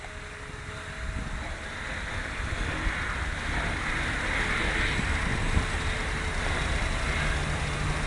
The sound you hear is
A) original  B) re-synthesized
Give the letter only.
A